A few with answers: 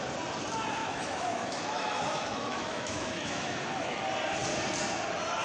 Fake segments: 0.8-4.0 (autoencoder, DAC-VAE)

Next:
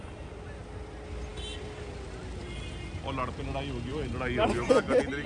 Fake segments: none

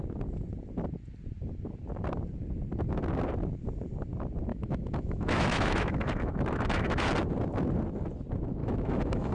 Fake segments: 4.5-7.1 (autoencoder, DAC-VAE); 8.6-9.3

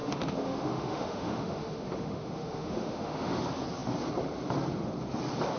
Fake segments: 0.0-3.4 (autoencoder, DAC-VAE)

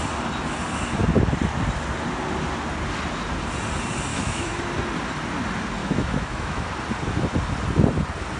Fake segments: 4.1-4.6 (autoencoder, DAC-VAE); 5.8-6.7

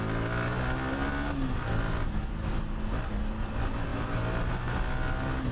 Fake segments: none

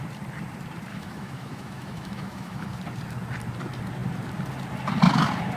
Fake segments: 0.9-2.8 (autoencoder, DAC-VAE)

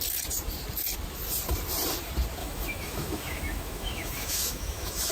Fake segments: 2.4-5.1 (autoencoder, DAC-VAE)